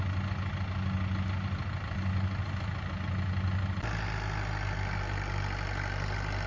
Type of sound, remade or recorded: recorded